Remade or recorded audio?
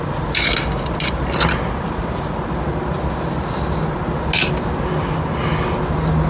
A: recorded